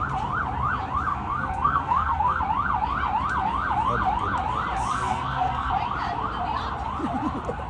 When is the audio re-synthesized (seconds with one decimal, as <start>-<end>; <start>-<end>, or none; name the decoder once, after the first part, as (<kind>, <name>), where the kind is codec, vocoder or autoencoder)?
1.1-2.4 (codec, SNAC); 4.9-5.7